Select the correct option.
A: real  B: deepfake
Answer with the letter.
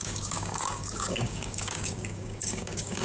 B